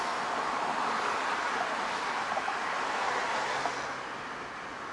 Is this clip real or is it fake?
real